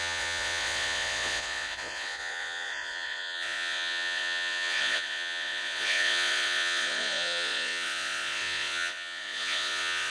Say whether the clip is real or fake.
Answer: fake